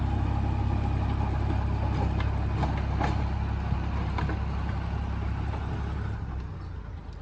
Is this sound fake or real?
real